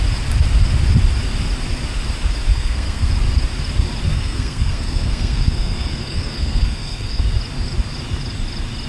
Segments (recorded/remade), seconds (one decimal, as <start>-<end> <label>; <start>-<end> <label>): 0.0-2.5 recorded; 2.5-3.1 remade; 3.1-4.1 recorded; 4.1-7.2 remade; 7.2-8.9 recorded